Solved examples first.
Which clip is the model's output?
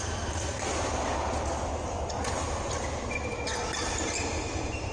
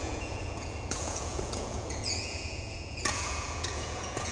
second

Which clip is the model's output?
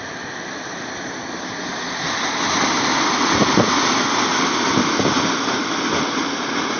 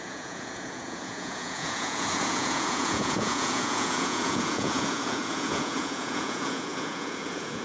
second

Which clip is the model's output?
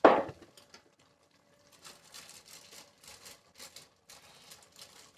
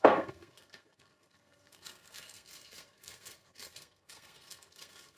second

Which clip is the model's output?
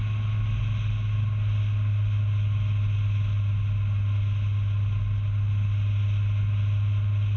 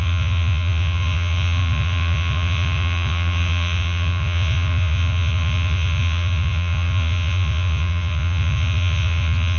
second